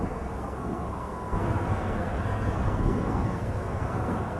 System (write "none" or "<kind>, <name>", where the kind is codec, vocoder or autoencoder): codec, SNAC